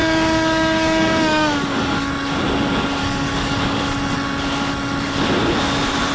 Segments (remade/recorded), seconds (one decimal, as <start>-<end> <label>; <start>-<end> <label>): 0.0-2.1 remade; 2.1-3.0 recorded; 3.0-3.8 remade; 3.8-6.1 recorded